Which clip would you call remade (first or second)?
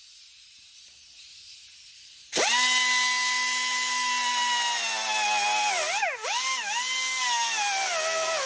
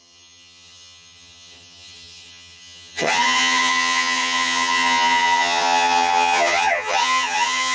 second